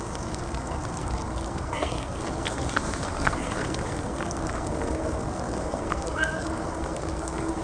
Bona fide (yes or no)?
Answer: no